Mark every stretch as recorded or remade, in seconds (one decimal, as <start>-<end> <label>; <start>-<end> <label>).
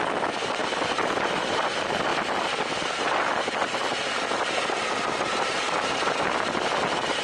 0.0-7.2 recorded